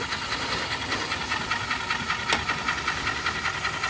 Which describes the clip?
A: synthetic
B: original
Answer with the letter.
B